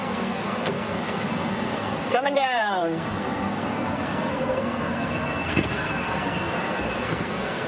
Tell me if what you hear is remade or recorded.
remade